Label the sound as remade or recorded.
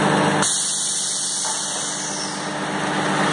recorded